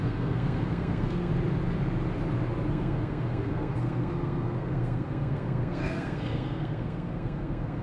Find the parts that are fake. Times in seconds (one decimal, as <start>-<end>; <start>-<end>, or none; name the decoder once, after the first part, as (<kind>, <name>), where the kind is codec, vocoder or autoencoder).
0.0-1.3 (codec, SNAC); 2.7-7.8